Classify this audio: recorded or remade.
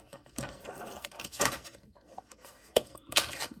remade